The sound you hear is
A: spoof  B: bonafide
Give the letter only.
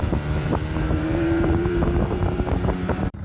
A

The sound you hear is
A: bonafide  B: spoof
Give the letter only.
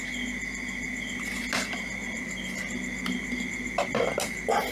A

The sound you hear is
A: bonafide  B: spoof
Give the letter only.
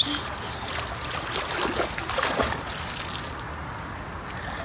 A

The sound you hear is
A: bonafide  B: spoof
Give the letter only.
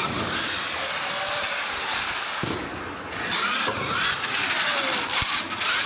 A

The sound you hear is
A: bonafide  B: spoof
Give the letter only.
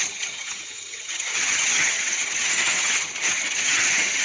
B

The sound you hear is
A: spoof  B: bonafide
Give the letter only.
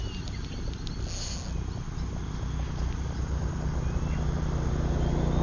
B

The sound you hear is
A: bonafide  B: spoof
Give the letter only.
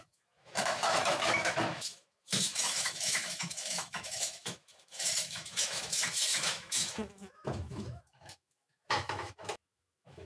B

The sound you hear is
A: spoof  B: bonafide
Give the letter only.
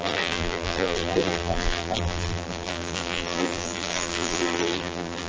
A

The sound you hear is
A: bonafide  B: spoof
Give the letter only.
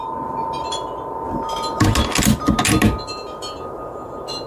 A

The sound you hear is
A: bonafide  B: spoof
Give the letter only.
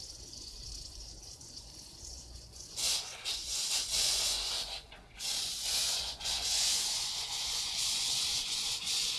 B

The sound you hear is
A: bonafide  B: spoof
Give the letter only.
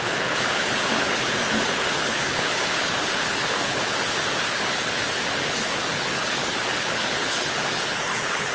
B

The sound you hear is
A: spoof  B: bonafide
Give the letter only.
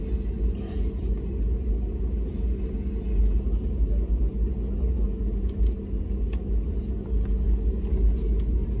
B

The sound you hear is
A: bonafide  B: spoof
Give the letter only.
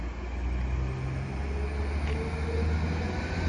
A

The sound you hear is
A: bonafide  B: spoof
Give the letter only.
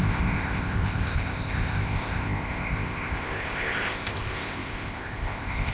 B